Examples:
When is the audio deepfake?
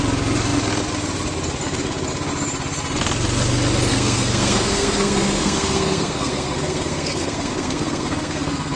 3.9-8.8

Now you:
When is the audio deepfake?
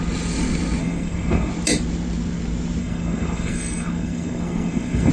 0.8-1.5; 2.8-5.1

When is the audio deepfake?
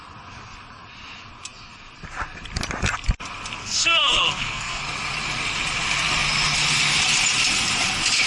3.6-4.8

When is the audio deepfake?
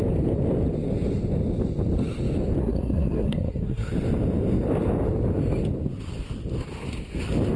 2.6-3.9